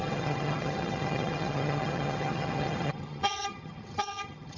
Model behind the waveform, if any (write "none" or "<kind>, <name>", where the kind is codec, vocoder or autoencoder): vocoder, HiFi-GAN